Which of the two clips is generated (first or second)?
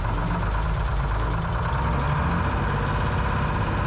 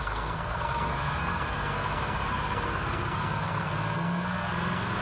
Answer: second